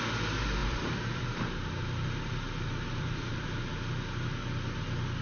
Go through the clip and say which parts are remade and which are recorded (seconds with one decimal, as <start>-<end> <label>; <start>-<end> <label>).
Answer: 0.0-0.6 recorded; 0.6-3.7 remade; 3.7-5.2 recorded